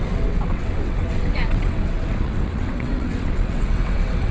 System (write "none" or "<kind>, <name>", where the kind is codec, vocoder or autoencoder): vocoder, WaveNeXt